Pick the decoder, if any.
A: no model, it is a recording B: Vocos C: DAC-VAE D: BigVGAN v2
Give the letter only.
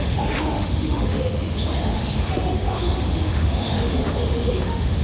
C